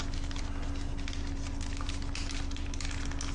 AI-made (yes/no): no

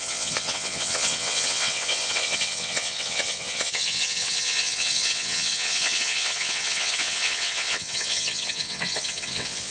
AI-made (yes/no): yes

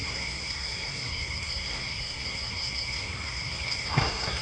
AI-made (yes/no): yes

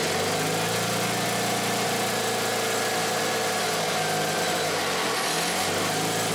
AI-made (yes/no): no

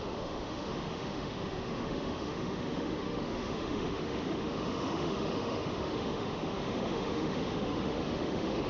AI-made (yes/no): yes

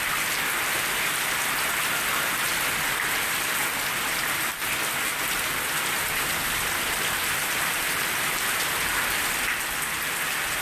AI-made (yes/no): no